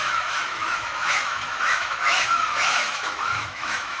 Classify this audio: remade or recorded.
remade